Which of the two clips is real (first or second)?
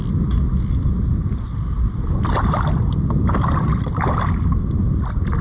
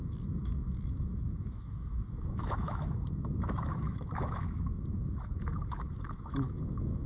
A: first